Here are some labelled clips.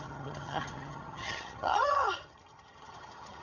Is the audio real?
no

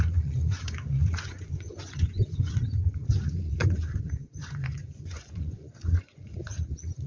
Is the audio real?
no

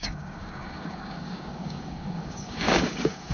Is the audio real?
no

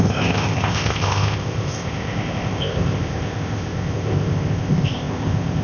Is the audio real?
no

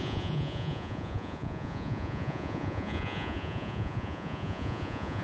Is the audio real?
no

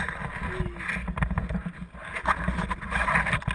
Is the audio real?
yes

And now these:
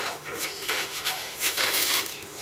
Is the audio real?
no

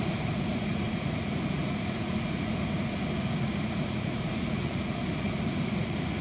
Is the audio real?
no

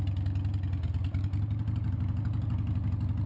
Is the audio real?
yes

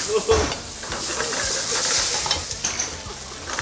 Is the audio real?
yes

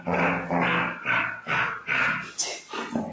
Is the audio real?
yes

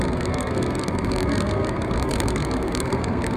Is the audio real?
no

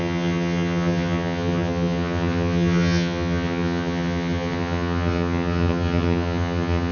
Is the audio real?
no